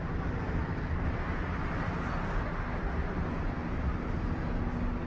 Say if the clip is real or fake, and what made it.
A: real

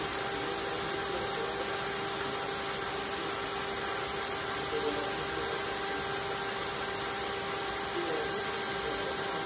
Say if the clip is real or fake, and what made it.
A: real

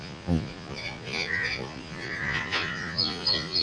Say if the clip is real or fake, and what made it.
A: fake, vocoder, Vocos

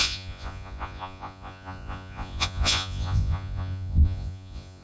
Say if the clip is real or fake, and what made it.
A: fake, vocoder, Vocos